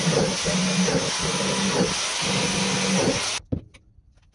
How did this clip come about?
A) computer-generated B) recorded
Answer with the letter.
B